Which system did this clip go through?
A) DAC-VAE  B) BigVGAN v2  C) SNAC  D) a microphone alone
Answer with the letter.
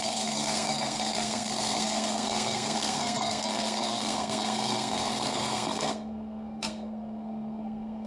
C